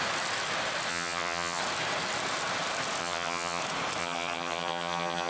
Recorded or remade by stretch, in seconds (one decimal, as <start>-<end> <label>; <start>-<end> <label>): 0.0-0.9 recorded; 0.9-1.6 remade; 1.6-3.0 recorded; 3.0-3.6 remade; 3.6-4.0 recorded; 4.0-5.3 remade